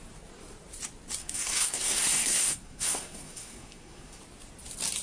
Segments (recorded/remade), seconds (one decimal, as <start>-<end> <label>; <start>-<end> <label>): 0.0-1.2 recorded; 1.2-4.2 remade; 4.2-5.0 recorded